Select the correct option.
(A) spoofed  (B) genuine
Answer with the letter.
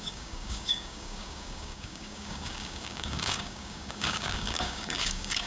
A